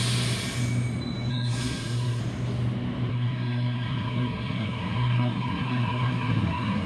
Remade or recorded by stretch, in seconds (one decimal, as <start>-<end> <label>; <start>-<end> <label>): 0.0-1.3 recorded; 1.3-2.2 remade; 2.2-3.1 recorded; 3.1-6.9 remade